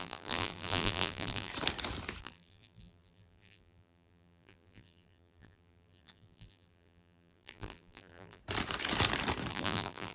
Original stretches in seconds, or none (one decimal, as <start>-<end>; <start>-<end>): 1.5-2.2; 8.4-9.5